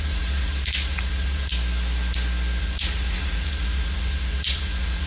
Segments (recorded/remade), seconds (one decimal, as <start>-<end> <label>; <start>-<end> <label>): 0.0-1.5 remade; 1.5-2.6 recorded; 2.6-5.1 remade